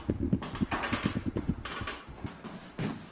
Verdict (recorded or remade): recorded